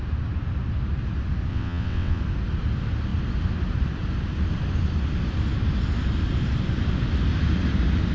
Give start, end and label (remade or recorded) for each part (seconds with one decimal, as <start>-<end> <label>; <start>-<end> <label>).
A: 0.0-1.5 recorded; 1.5-2.2 remade; 2.2-8.1 recorded